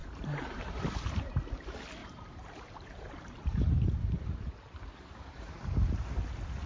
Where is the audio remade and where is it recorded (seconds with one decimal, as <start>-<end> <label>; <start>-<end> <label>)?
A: 0.0-1.3 remade; 1.3-2.0 recorded; 2.0-5.5 remade; 5.5-6.7 recorded